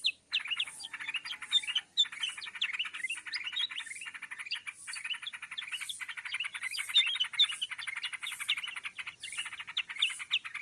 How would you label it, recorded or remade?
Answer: recorded